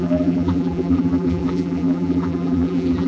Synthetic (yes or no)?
yes